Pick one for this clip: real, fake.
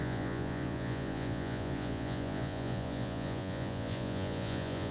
fake